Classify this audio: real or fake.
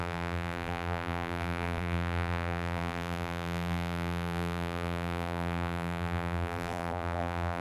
fake